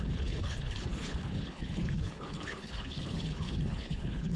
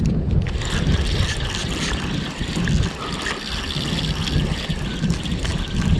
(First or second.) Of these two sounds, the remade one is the first